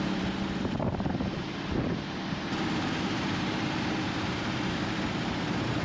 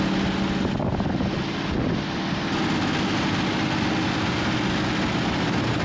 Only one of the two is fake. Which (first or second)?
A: first